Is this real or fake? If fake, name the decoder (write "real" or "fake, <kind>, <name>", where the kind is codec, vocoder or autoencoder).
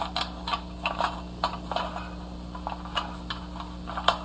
real